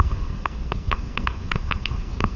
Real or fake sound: fake